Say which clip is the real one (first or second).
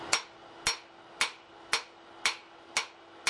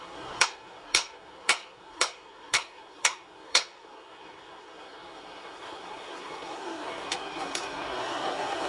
first